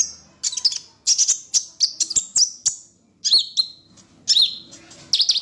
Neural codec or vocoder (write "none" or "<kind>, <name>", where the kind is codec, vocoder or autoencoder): none